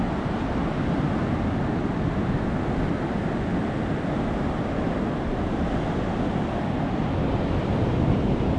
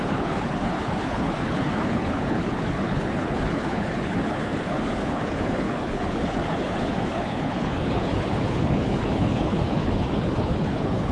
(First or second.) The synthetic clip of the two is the second